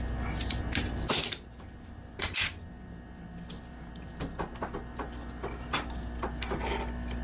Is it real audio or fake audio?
real